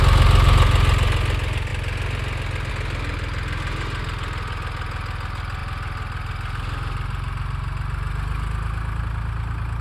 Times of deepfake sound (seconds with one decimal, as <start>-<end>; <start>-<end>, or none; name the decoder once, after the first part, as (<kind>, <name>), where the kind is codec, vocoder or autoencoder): none